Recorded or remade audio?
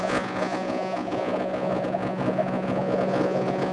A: remade